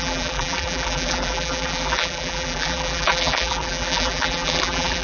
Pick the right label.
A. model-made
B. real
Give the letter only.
A